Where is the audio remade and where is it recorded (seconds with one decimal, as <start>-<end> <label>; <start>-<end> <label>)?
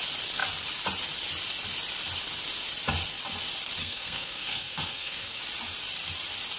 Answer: 0.0-3.8 recorded; 3.8-5.4 remade; 5.4-6.6 recorded